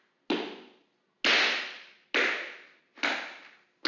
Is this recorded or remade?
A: recorded